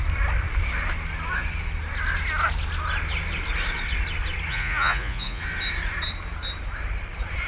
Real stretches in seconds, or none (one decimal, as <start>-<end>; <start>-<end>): 0.0-4.5; 5.4-7.5